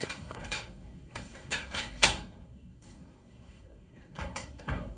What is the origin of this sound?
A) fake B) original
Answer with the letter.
A